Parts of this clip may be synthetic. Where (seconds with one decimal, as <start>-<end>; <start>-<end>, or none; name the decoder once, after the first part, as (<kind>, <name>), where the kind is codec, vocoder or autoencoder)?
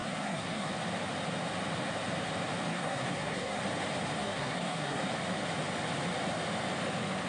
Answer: 0.0-0.7 (codec, SNAC); 2.7-3.6; 4.2-5.0